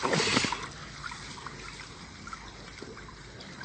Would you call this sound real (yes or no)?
yes